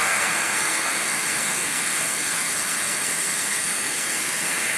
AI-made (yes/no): yes